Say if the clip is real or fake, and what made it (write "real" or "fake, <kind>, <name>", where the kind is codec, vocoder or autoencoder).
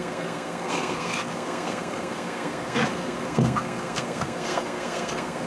fake, codec, SNAC